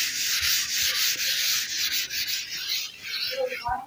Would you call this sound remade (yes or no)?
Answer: no